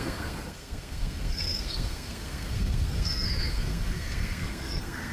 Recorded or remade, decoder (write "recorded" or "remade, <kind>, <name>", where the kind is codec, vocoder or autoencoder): remade, codec, SNAC